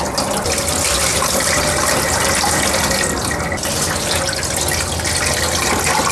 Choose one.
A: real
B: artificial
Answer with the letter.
A